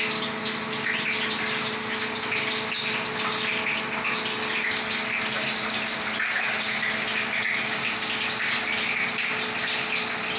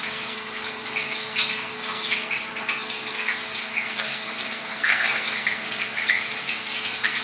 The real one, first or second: first